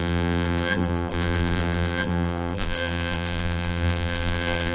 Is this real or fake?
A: fake